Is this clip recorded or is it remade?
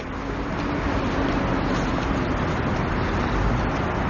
recorded